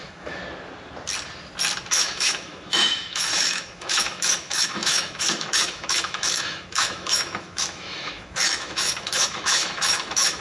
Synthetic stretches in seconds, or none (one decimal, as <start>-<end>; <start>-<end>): 0.0-0.4; 1.9-10.4